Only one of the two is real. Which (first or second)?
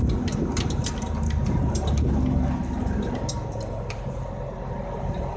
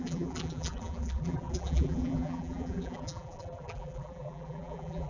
first